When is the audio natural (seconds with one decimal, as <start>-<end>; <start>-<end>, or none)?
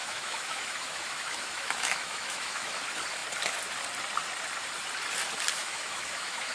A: 2.8-5.6